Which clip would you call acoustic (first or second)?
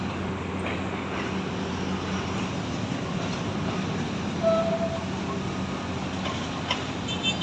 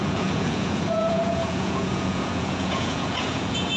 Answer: first